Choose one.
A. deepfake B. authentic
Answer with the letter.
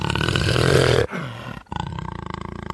B